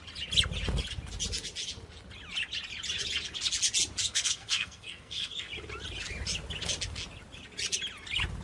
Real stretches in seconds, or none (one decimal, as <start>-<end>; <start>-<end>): 0.0-4.0; 5.5-8.4